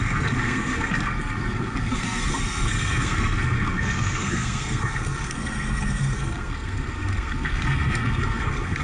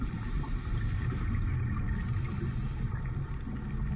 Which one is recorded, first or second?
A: second